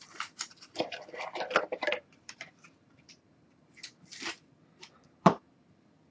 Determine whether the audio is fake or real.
fake